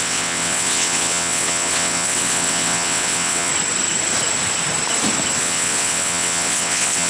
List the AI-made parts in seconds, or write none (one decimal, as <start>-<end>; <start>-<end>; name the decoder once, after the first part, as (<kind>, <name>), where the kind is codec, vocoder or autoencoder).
0.0-3.5 (vocoder, WaveNeXt); 5.4-7.1